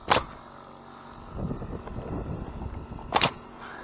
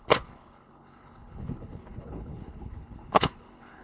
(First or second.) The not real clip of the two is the second